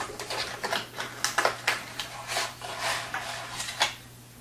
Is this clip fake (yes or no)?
no